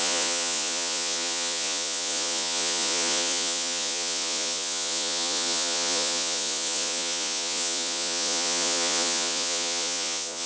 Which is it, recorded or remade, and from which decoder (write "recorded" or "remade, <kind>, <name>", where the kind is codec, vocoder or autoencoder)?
remade, vocoder, Vocos